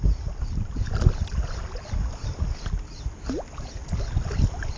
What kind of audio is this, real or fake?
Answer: real